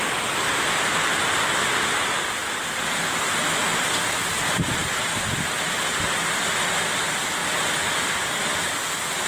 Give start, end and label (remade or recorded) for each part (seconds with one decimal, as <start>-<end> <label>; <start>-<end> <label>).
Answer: 0.0-4.8 recorded; 4.8-5.8 remade; 5.8-7.4 recorded; 7.4-8.7 remade; 8.7-9.3 recorded